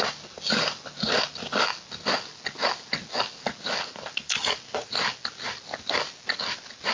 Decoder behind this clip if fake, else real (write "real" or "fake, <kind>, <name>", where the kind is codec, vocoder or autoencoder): real